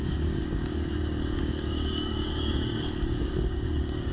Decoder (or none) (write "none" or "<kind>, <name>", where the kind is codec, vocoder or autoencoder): codec, DAC